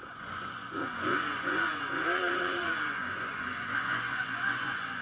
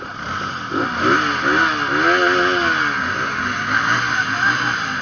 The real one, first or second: second